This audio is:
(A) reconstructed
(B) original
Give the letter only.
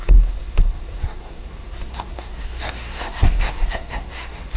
A